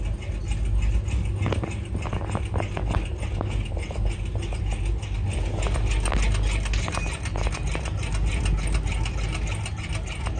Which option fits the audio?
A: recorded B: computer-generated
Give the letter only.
A